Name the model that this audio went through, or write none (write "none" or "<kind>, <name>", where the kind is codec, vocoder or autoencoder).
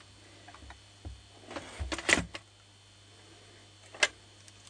none